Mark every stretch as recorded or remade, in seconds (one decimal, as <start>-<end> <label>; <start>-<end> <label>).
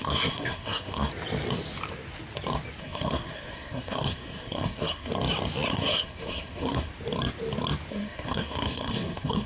0.0-1.1 remade; 1.1-2.8 recorded; 2.8-5.1 remade; 5.1-5.7 recorded; 5.7-6.9 remade; 6.9-7.9 recorded; 7.9-9.5 remade